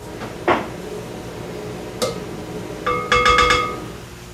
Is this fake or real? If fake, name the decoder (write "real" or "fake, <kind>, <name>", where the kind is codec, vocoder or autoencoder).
real